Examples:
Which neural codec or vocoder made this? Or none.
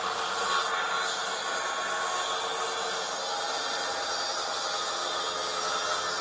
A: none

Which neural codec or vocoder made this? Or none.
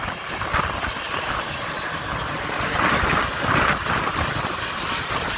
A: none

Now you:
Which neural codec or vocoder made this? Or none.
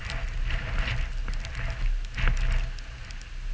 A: none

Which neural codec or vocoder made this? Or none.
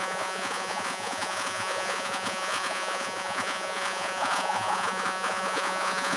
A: vocoder, Vocos